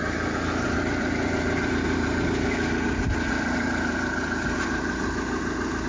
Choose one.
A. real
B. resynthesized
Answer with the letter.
B